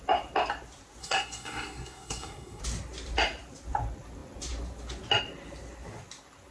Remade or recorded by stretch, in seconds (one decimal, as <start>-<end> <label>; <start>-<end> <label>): 0.0-1.0 recorded; 1.0-2.6 remade; 2.6-6.5 recorded